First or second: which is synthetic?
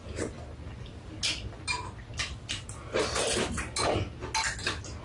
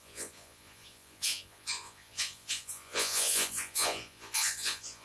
second